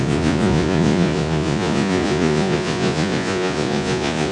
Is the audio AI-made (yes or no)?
yes